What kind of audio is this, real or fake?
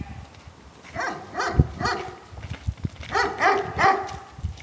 real